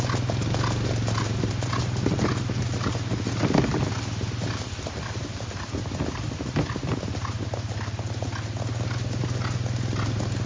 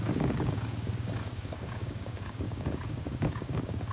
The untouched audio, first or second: first